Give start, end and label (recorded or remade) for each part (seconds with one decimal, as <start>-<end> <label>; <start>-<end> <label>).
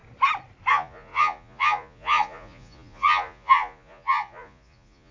0.0-0.7 recorded; 0.7-5.1 remade